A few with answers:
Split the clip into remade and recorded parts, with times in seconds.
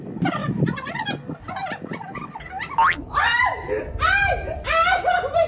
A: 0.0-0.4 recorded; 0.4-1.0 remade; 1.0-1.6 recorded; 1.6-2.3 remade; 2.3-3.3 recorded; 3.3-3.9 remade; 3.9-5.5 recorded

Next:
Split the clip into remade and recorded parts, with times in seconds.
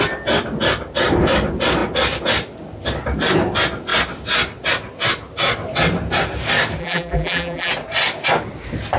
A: 0.0-6.8 recorded; 6.8-7.7 remade; 7.7-9.0 recorded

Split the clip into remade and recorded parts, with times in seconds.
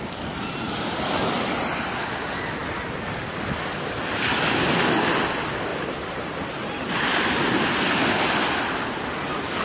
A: 0.0-2.6 recorded; 2.6-3.2 remade; 3.2-5.7 recorded; 5.7-7.9 remade; 7.9-9.6 recorded